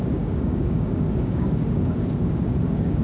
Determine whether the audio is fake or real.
fake